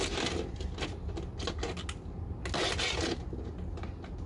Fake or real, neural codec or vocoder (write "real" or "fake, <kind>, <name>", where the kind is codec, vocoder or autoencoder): real